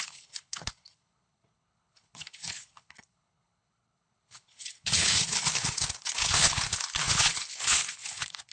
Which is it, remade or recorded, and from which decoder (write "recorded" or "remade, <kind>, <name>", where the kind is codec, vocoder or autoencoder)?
remade, codec, HILCodec